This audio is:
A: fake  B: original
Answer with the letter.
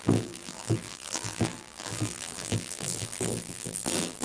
A